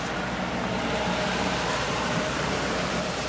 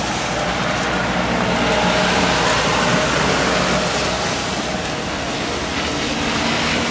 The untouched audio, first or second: second